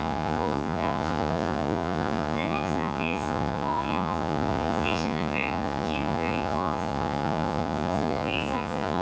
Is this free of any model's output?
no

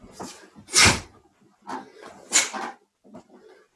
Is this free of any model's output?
yes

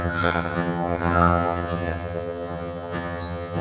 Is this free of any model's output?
no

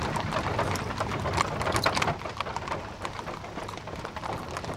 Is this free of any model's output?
yes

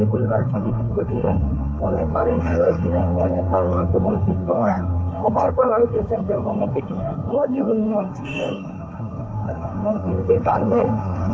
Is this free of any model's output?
no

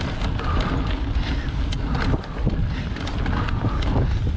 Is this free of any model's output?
yes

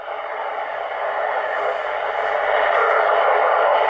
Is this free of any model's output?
yes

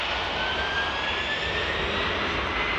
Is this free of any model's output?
yes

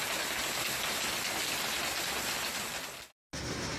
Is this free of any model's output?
yes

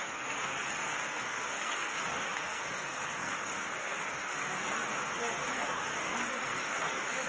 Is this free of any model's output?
no